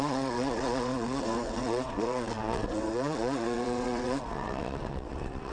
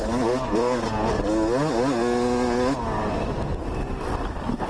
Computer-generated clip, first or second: first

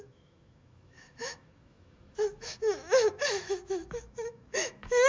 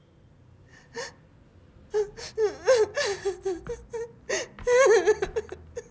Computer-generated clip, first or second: first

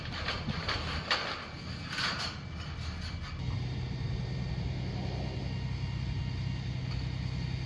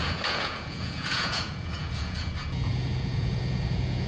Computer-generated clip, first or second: second